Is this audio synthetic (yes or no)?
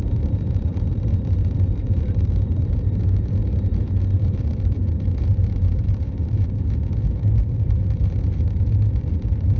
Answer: yes